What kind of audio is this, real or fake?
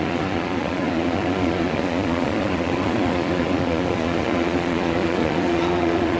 fake